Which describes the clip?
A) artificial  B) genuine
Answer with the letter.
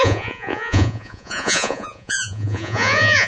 A